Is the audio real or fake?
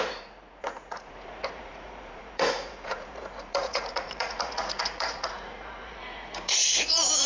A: fake